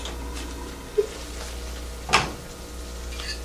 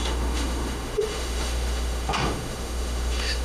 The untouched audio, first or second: first